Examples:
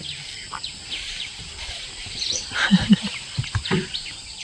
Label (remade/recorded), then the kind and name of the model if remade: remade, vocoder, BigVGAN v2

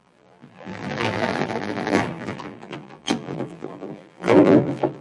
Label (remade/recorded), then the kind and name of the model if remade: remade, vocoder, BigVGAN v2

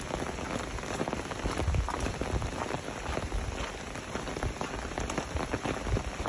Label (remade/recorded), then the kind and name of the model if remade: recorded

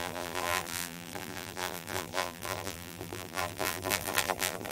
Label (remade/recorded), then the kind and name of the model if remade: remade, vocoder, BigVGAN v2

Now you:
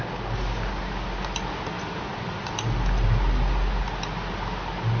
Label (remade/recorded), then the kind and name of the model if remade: recorded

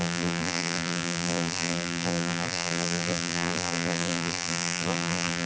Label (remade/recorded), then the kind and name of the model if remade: remade, vocoder, BigVGAN v2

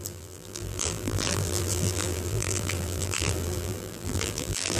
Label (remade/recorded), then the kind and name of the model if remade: remade, vocoder, BigVGAN v2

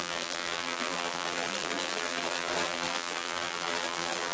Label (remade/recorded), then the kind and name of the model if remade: remade, vocoder, BigVGAN v2